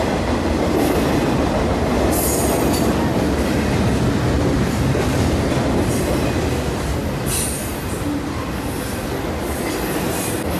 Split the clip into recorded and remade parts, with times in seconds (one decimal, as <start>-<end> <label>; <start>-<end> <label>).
0.0-10.6 recorded